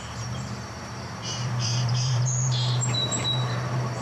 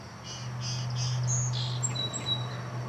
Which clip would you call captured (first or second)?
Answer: second